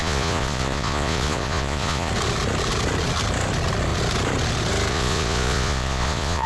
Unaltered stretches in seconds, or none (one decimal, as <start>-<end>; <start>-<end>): 2.1-4.9